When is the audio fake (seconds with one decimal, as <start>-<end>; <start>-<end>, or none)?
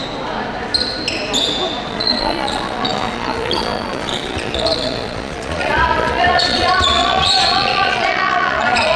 1.9-9.0